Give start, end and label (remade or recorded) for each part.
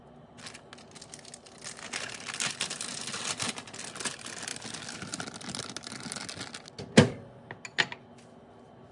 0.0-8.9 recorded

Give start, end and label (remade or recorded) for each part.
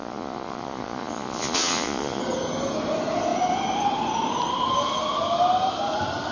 0.0-2.2 remade; 2.2-6.3 recorded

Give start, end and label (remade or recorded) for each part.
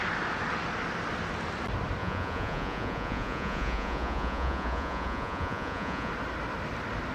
0.0-2.0 recorded; 2.0-6.1 remade; 6.1-7.1 recorded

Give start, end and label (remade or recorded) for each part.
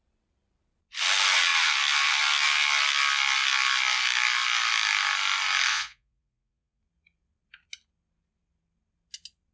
0.0-5.7 recorded; 5.7-6.8 remade; 6.8-9.5 recorded